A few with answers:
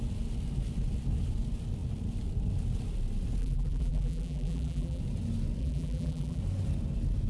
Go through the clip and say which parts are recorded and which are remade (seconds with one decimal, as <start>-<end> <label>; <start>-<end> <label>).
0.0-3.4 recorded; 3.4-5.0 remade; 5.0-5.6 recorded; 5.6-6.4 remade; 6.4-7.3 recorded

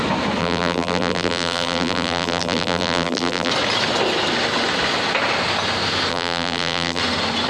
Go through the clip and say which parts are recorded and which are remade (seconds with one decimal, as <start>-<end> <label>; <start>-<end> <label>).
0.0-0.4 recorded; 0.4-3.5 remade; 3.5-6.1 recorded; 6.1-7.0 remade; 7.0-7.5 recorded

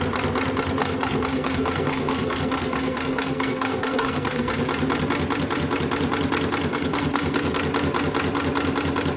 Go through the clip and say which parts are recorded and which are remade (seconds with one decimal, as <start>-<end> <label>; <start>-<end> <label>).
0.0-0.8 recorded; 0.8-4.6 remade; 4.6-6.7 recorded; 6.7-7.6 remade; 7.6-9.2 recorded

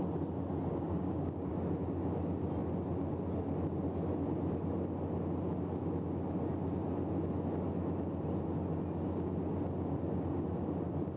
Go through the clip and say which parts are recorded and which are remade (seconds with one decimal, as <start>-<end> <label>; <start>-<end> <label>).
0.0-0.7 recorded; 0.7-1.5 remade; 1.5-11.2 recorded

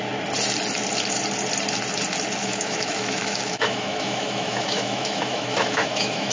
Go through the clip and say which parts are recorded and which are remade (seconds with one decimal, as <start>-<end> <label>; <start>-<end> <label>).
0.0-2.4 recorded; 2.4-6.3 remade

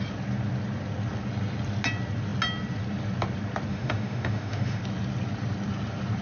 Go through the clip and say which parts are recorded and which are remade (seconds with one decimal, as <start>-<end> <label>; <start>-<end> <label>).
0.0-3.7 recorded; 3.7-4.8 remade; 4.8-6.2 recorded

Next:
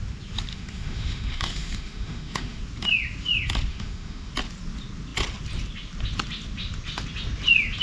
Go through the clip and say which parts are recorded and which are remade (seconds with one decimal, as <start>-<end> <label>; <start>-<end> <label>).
0.0-0.5 recorded; 0.5-2.6 remade; 2.6-3.7 recorded; 3.7-4.3 remade; 4.3-7.8 recorded